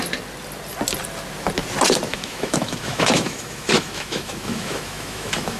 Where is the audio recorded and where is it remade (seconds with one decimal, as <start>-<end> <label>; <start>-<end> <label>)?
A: 0.0-2.1 recorded; 2.1-5.6 remade